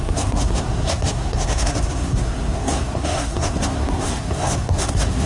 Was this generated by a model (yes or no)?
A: yes